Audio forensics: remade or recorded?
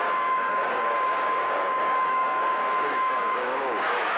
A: remade